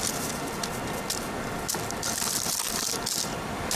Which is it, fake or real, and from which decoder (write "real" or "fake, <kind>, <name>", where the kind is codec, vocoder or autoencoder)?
real